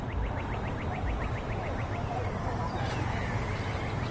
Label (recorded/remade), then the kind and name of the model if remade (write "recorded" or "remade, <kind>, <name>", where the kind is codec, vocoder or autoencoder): recorded